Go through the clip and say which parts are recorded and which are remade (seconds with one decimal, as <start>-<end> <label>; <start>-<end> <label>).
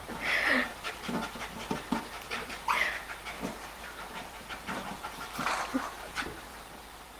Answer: 0.0-7.2 remade